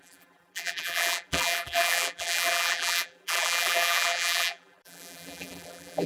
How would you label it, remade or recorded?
remade